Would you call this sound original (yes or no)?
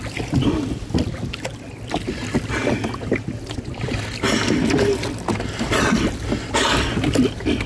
yes